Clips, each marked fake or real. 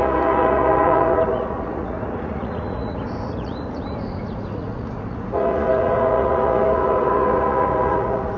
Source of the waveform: fake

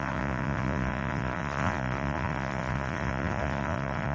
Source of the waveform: fake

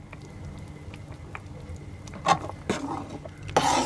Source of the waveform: real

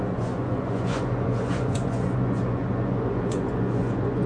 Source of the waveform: fake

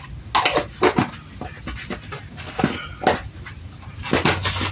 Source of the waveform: real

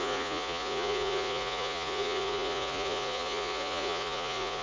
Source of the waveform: fake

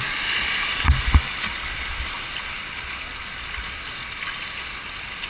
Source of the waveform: real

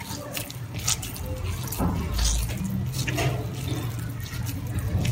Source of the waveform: real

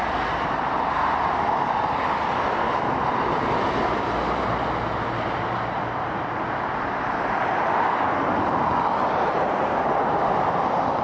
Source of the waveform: real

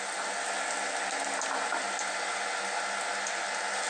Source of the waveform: real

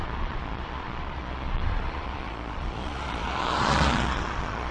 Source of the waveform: fake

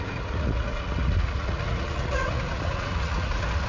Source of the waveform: fake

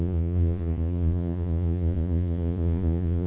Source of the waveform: fake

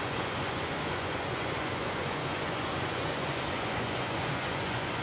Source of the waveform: fake